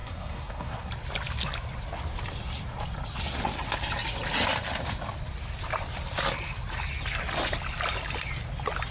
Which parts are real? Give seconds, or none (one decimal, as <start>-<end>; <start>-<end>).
0.9-8.9